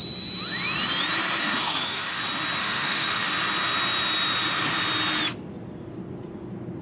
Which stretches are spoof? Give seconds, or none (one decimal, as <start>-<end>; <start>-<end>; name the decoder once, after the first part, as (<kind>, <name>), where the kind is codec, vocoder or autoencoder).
1.4-2.2 (autoencoder, DAC-VAE); 2.6-3.3